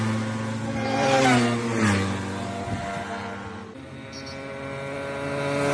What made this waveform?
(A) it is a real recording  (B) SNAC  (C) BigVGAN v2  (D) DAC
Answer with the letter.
A